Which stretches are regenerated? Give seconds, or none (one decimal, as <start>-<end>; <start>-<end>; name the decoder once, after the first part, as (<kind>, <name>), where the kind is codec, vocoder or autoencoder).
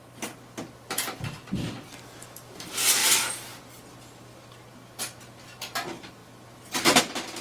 none